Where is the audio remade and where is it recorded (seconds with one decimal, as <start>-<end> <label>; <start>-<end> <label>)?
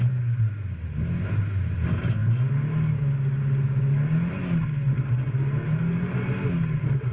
0.0-7.1 recorded